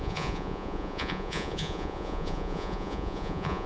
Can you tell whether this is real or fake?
fake